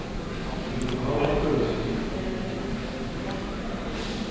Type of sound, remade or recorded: recorded